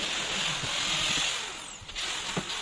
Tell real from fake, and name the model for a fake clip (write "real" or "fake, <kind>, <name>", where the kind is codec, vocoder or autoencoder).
real